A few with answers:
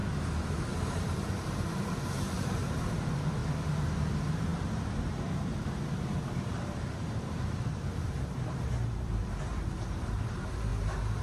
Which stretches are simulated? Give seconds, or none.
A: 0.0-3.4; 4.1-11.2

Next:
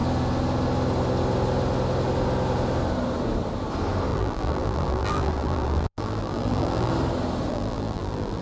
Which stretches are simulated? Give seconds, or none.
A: 4.1-6.9; 7.5-8.4

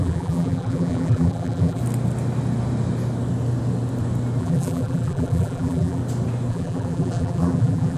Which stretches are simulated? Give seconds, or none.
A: 0.0-1.8; 4.4-6.0; 6.5-8.0

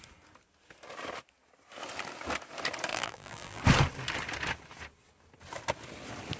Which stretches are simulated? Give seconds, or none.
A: 2.9-3.6

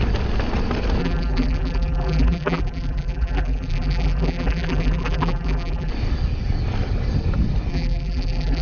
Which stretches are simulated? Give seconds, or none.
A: 1.0-5.9; 7.7-8.6

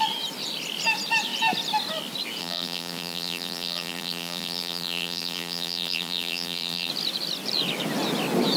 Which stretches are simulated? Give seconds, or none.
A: 2.4-6.9

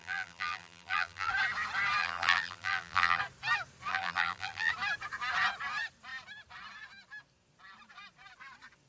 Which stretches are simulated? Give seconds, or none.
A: 0.0-1.3; 2.0-3.2; 3.9-4.7

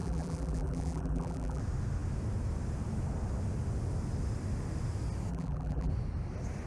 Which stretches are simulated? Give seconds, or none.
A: 0.0-1.6; 5.3-5.9